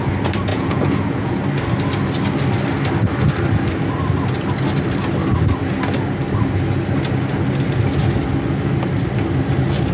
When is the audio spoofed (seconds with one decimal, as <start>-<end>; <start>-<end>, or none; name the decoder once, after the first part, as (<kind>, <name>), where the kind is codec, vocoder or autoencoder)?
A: 0.5-1.4 (vocoder, Vocos)